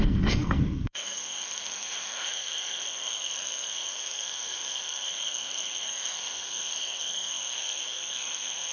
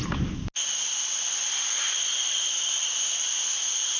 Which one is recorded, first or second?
second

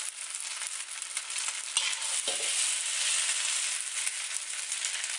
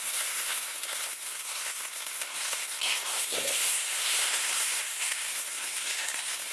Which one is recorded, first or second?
first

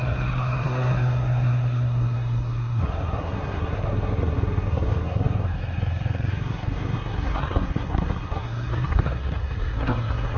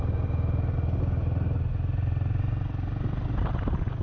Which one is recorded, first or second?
second